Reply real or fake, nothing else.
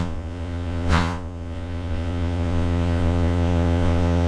fake